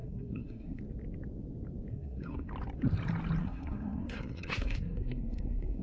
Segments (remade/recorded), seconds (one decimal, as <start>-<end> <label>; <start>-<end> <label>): 0.0-0.8 remade; 0.8-1.9 recorded; 1.9-2.5 remade; 2.5-3.4 recorded; 3.4-5.8 remade